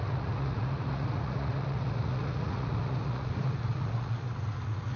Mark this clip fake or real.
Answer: fake